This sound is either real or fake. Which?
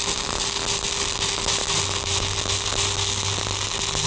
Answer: real